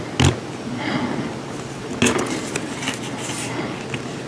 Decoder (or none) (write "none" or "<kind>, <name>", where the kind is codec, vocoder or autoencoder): none